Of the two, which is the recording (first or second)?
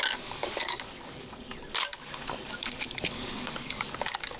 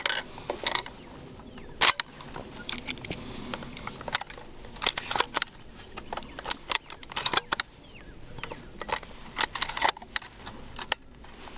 second